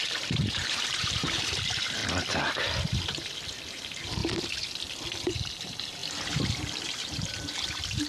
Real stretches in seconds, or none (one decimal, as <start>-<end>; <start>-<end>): 2.0-3.7; 4.2-5.2